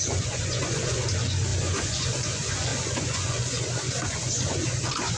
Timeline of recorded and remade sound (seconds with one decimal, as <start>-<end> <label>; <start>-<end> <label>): 0.0-5.2 remade